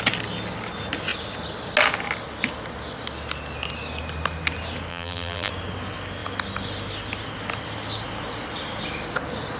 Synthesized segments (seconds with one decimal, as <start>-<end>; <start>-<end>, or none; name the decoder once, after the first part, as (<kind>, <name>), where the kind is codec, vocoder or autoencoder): 4.9-5.5 (vocoder, BigVGAN v2)